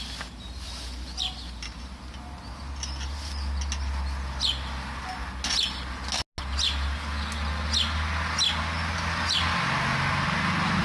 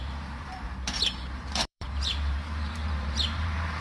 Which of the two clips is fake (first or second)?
second